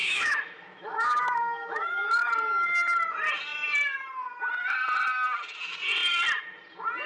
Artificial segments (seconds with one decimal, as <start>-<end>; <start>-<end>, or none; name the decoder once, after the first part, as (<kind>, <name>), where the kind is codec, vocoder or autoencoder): 0.0-2.3 (autoencoder, DAC-VAE)